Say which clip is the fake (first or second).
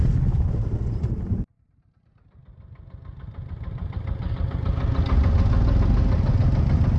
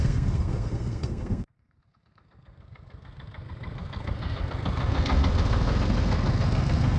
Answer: second